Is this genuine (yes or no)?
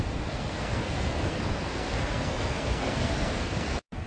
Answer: no